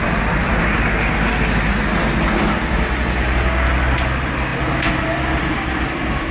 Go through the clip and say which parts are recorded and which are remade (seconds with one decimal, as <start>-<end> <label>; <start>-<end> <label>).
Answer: 0.0-4.5 recorded; 4.5-5.0 remade; 5.0-6.3 recorded